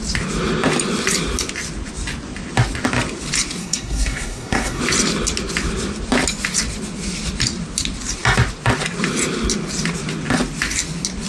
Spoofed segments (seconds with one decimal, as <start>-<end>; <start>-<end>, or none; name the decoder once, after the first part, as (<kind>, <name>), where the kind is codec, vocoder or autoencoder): 3.6-4.8 (codec, SNAC)